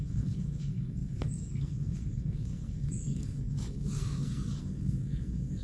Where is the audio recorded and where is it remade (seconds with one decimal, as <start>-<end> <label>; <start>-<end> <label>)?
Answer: 0.0-5.6 remade